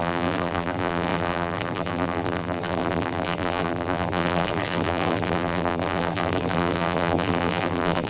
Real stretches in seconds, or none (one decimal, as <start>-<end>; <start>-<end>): none